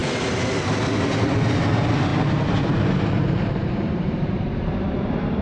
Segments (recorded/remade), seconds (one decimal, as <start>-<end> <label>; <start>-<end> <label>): 0.0-2.1 recorded; 2.1-5.4 remade